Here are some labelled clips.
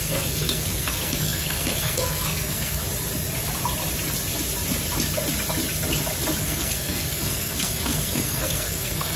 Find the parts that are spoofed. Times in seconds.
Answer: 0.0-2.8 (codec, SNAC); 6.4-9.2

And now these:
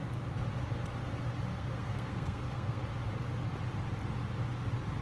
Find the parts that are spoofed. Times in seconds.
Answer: 1.5-2.8 (codec, SNAC)

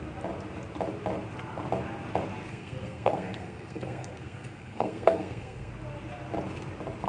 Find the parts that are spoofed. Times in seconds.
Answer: 2.5-5.7 (codec, SNAC)

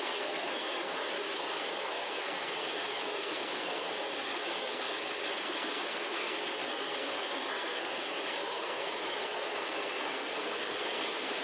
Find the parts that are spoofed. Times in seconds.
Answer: 0.0-11.4 (codec, SNAC)

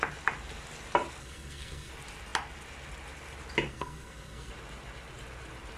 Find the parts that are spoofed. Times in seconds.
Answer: 1.2-1.9 (codec, SNAC); 3.7-4.5